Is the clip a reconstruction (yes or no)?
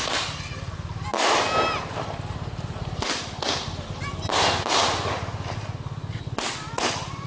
no